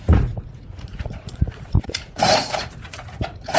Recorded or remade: remade